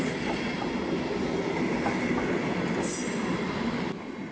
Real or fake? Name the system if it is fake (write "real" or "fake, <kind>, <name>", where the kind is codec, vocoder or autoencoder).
real